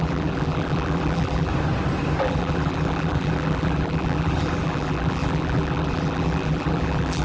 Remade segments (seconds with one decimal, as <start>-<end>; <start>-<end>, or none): 0.0-1.5; 2.2-7.2